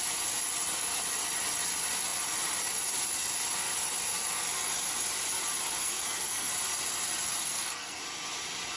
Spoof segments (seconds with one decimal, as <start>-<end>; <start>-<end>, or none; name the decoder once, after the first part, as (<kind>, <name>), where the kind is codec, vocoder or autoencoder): 5.8-6.5 (codec, SNAC); 7.4-8.0